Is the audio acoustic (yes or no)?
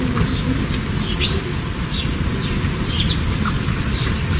yes